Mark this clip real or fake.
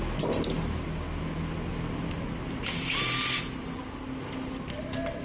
real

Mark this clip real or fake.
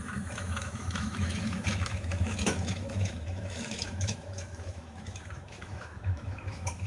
fake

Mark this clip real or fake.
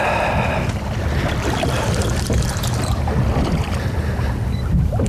real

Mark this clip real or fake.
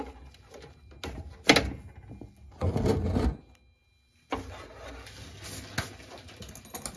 real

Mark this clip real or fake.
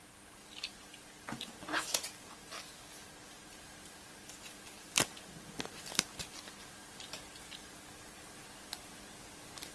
real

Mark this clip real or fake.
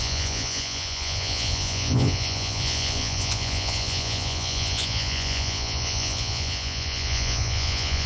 fake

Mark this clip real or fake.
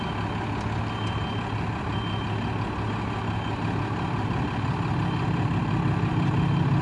real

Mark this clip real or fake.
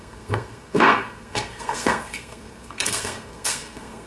fake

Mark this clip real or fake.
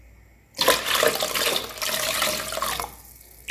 real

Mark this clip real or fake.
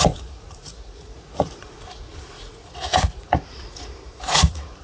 fake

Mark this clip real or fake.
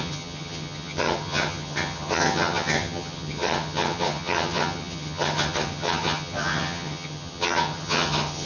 fake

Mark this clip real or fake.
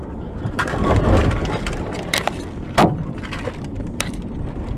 fake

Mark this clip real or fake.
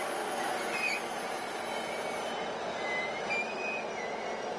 real